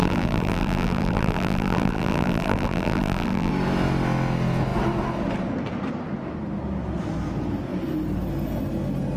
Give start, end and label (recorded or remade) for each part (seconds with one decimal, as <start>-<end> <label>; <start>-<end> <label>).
0.0-3.5 remade; 3.5-9.2 recorded